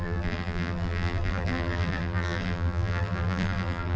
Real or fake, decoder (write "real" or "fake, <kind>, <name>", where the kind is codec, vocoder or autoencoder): fake, vocoder, BigVGAN v2